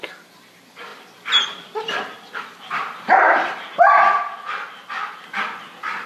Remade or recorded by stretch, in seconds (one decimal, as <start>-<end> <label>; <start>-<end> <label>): 0.0-0.9 remade; 0.9-2.4 recorded; 2.4-6.1 remade